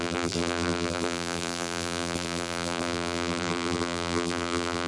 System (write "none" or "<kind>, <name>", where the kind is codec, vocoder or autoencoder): vocoder, BigVGAN v2